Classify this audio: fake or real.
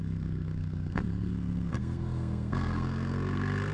fake